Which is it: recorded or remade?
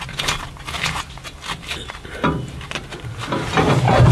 recorded